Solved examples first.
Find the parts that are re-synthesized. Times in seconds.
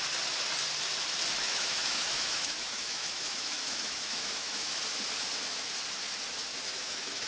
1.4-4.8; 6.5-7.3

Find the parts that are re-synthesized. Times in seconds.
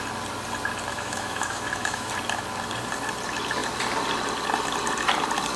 0.9-2.1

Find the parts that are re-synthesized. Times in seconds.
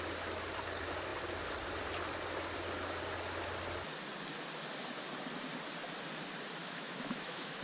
6.6-7.6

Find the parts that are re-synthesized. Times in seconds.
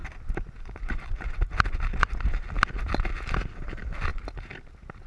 none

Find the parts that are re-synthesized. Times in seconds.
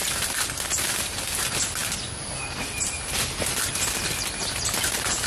none